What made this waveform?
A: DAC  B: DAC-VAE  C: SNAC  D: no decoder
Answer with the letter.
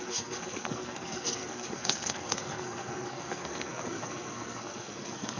C